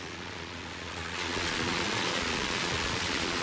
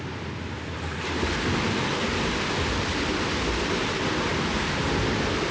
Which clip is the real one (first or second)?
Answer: second